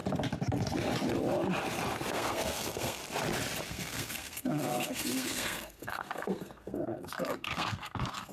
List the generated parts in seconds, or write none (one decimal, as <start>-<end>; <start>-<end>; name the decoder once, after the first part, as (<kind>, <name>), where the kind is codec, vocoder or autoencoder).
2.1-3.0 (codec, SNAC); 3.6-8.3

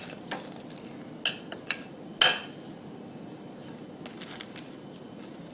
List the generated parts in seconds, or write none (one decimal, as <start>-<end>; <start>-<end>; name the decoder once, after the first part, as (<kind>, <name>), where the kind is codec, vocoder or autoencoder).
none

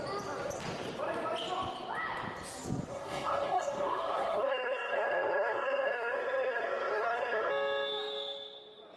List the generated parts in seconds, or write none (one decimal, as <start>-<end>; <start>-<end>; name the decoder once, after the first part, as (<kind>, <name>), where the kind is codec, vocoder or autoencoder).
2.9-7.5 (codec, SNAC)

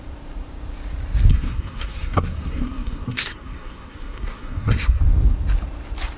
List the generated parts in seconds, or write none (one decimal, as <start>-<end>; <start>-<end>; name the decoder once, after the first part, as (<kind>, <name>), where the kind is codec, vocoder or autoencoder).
1.3-5.0 (codec, SNAC)

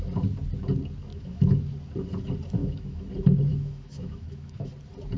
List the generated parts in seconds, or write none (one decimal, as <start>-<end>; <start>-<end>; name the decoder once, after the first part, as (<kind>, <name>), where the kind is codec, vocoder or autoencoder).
1.1-1.6 (autoencoder, DAC-VAE); 2.6-3.1; 3.5-4.7

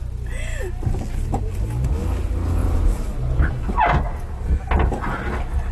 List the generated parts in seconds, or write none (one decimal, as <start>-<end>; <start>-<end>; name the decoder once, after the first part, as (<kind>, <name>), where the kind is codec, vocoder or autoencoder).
2.6-3.5 (vocoder, BigVGAN v2)

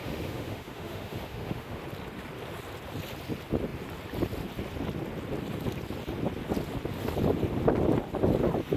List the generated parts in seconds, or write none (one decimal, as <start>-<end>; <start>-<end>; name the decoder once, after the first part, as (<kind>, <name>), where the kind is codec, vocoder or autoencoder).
0.0-1.8 (autoencoder, DAC-VAE)

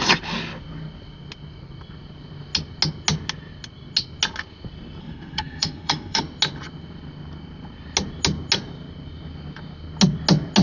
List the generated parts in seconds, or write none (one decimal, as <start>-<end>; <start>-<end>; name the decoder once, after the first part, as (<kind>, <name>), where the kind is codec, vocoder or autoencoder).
5.0-6.2 (codec, SNAC)